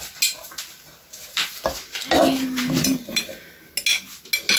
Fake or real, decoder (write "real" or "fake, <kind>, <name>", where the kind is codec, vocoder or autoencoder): real